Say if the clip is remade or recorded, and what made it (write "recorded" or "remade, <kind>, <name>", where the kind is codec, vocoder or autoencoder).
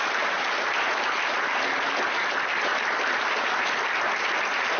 recorded